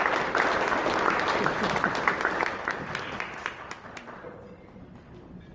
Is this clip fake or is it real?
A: real